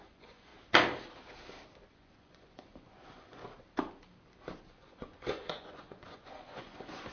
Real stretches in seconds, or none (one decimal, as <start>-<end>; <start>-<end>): 0.5-1.9; 3.4-4.7